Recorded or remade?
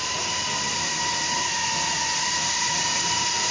remade